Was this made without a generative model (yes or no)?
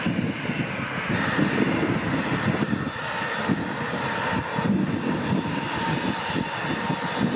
yes